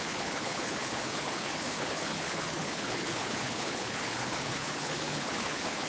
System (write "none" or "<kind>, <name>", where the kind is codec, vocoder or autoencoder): codec, HILCodec